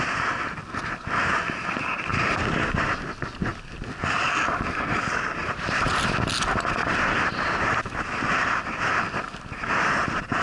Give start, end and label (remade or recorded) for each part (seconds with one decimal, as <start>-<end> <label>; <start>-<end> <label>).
0.0-2.1 recorded; 2.1-2.7 remade; 2.7-5.4 recorded; 5.4-6.1 remade; 6.1-6.8 recorded; 6.8-8.0 remade; 8.0-10.4 recorded